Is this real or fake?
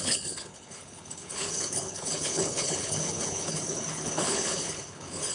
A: fake